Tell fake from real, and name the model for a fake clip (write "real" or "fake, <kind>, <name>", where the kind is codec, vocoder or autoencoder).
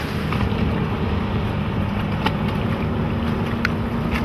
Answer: real